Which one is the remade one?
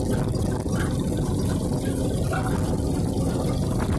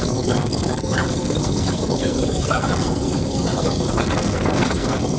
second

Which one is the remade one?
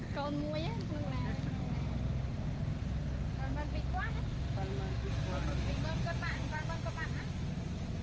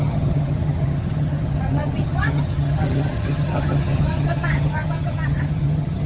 second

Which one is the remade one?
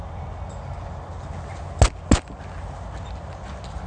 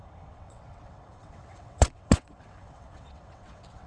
second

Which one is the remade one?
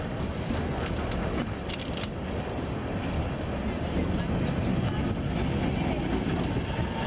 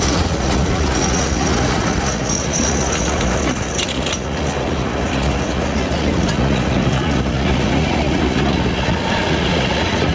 second